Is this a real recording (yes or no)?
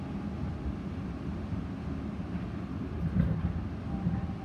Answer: yes